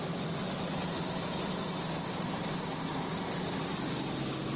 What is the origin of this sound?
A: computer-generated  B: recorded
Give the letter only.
B